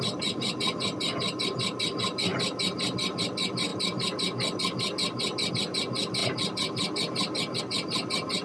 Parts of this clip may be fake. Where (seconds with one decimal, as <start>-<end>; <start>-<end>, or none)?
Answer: none